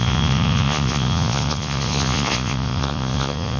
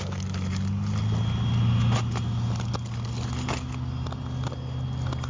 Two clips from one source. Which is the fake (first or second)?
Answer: first